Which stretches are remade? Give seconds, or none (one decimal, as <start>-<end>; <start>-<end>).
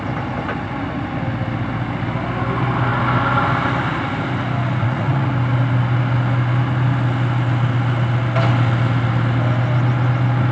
4.8-5.3